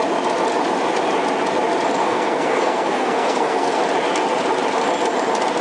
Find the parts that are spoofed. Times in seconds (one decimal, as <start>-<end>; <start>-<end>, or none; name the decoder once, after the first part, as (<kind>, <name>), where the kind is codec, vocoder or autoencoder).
2.0-3.8 (codec, SNAC)